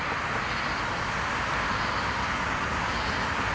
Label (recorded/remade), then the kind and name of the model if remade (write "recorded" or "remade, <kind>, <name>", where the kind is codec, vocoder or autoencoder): recorded